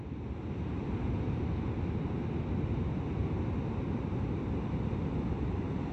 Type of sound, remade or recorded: recorded